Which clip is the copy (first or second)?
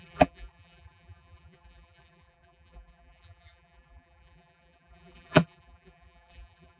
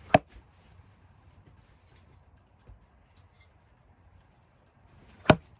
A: first